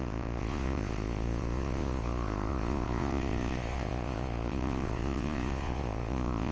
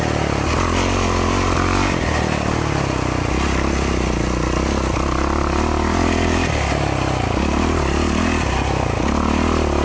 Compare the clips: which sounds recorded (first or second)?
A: second